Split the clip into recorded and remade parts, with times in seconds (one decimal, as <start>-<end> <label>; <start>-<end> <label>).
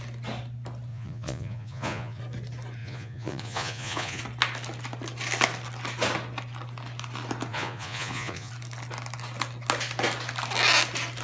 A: 0.0-0.9 recorded; 0.9-2.2 remade; 2.2-2.8 recorded; 2.8-4.2 remade; 4.2-7.5 recorded; 7.5-8.5 remade; 8.5-11.2 recorded